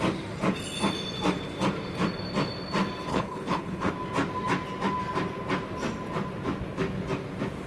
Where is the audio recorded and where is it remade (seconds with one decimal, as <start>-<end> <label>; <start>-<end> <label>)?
0.0-3.1 recorded; 3.1-3.9 remade; 3.9-7.7 recorded